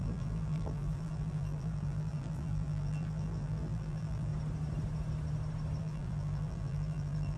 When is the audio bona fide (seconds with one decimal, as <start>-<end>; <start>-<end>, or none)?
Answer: 4.3-5.8